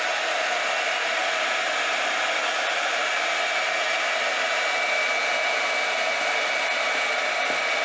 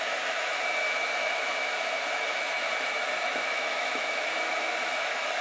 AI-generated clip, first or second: second